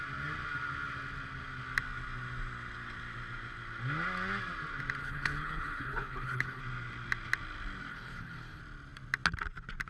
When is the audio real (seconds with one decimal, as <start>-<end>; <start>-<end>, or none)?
0.0-5.0; 6.6-7.9; 8.6-9.9